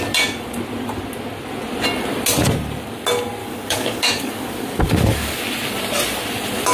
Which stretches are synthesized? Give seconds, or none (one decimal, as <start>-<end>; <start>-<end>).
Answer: 3.4-5.4